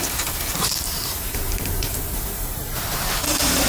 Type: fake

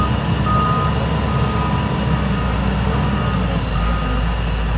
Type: real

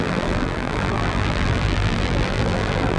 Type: fake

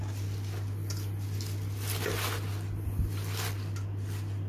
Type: real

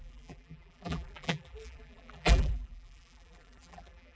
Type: fake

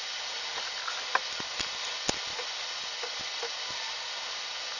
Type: real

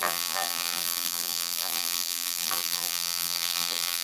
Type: fake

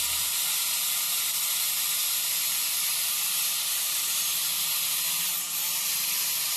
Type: fake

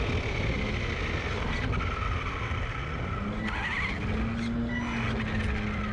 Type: real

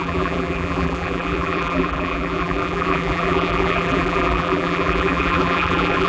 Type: fake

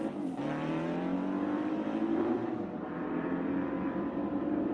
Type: fake